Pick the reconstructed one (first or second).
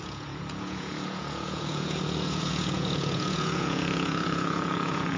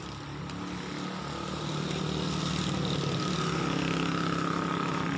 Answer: first